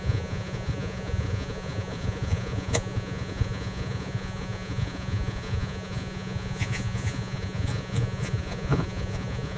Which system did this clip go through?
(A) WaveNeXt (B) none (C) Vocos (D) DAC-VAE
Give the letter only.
C